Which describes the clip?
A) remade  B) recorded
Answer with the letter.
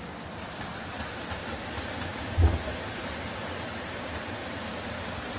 A